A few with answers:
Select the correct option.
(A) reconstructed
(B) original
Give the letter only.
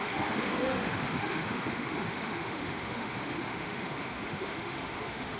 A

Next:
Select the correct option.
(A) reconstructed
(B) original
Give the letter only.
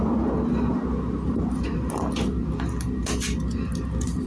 B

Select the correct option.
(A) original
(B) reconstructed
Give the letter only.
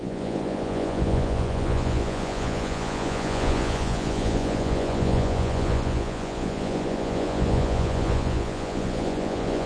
B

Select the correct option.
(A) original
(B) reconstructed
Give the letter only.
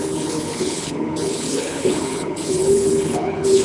B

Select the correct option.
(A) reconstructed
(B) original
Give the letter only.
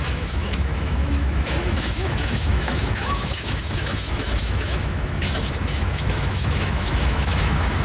A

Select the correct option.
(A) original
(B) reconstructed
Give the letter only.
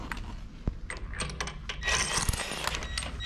A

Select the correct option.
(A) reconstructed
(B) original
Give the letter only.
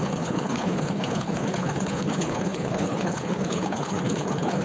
A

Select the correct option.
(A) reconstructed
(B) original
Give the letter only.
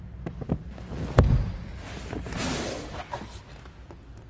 B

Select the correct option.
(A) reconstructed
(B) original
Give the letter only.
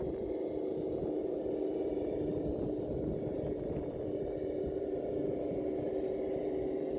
B